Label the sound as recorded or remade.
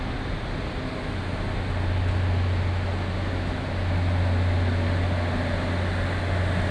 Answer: recorded